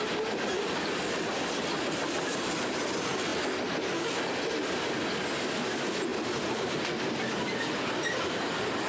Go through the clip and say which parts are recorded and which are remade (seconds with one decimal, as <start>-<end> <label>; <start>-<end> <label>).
0.0-6.1 recorded; 6.1-6.8 remade; 6.8-8.9 recorded